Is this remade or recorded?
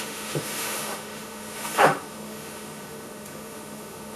remade